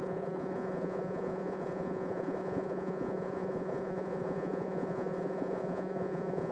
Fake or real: fake